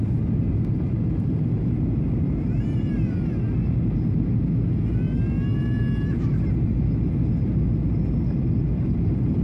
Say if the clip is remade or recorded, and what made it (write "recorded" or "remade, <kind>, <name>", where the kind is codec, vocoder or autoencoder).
recorded